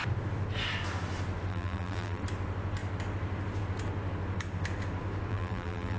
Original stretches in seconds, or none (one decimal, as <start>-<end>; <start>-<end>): 0.0-1.5; 2.2-5.3